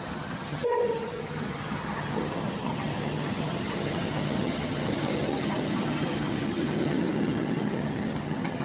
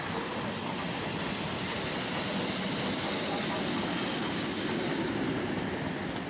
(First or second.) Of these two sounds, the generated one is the first